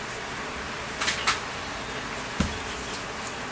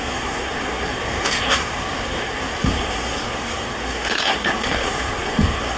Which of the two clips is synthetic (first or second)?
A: second